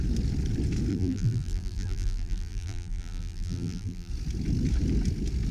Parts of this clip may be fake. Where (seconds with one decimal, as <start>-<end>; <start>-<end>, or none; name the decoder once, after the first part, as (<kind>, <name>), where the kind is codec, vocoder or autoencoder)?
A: 0.9-4.1 (vocoder, BigVGAN v2)